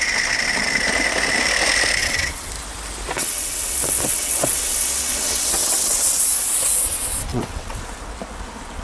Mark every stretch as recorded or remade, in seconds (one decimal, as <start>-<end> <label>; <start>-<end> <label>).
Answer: 0.0-2.0 recorded; 2.0-2.5 remade; 2.5-3.2 recorded; 3.2-6.2 remade; 6.2-7.3 recorded; 7.3-7.8 remade; 7.8-8.8 recorded